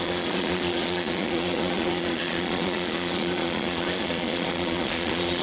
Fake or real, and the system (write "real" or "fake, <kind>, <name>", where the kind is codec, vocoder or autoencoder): fake, vocoder, Vocos